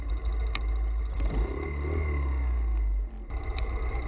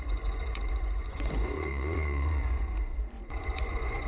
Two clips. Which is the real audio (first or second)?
first